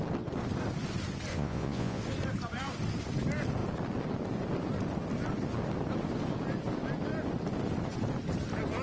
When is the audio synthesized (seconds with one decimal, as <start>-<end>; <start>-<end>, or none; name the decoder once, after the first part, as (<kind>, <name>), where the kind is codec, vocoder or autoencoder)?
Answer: 1.3-2.0 (vocoder, Vocos)